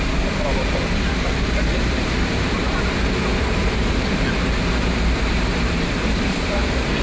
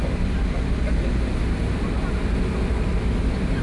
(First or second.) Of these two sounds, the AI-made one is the first